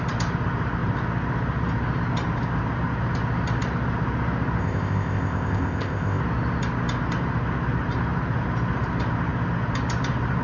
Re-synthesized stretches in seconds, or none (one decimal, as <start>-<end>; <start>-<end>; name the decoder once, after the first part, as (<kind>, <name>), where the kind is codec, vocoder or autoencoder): 4.6-6.2 (codec, ZipCodec)